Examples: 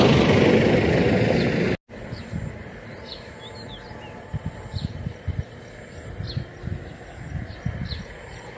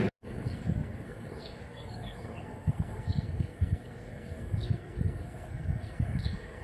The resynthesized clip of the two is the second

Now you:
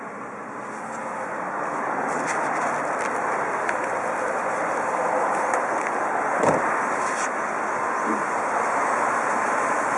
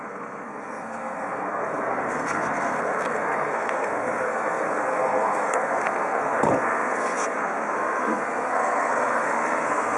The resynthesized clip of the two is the second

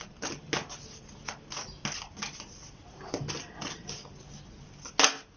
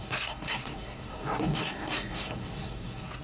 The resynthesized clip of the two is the second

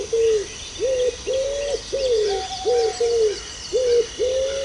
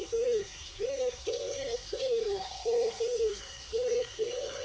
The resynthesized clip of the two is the second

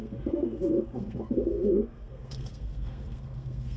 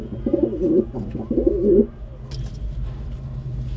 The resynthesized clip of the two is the first